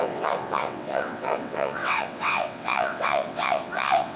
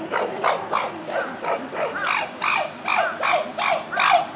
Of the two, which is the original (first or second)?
second